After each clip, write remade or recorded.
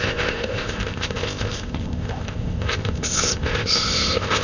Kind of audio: remade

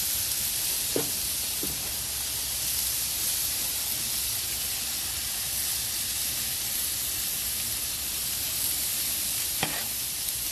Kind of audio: recorded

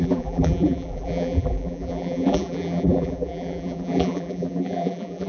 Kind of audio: remade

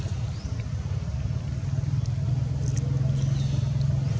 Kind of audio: recorded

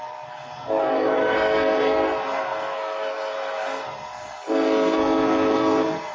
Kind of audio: remade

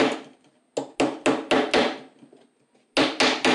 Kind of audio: recorded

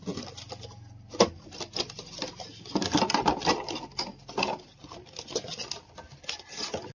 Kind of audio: recorded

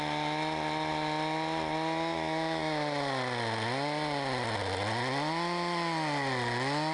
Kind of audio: recorded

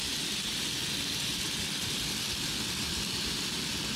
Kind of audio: recorded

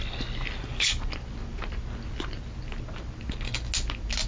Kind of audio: recorded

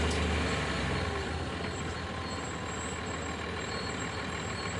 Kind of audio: recorded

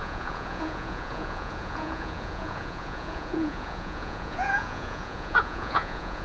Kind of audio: remade